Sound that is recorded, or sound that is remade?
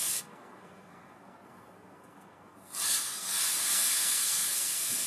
remade